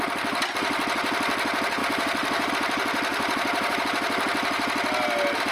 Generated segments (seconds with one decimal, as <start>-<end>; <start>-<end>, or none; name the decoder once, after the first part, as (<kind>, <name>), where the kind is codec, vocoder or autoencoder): 1.8-2.5 (vocoder, BigVGAN v2); 3.1-3.8

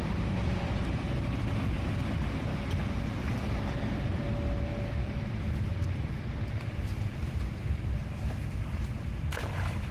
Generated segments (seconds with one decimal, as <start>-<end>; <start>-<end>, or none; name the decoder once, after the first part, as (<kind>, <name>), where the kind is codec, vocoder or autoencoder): 0.0-2.5 (vocoder, BigVGAN v2); 3.7-9.9

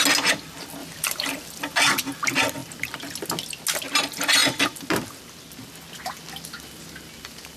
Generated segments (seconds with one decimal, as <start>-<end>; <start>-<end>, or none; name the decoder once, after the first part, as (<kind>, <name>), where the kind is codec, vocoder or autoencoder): 0.8-1.8 (vocoder, BigVGAN v2)

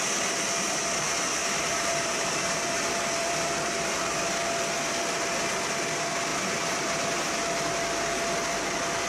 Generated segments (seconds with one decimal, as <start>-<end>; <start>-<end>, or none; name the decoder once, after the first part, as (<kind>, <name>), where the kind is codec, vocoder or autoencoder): 1.4-3.9 (vocoder, BigVGAN v2); 6.3-7.1

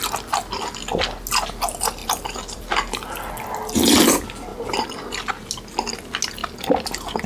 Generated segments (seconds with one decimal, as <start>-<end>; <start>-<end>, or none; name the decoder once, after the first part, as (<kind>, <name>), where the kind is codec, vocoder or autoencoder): 2.0-3.3 (vocoder, BigVGAN v2)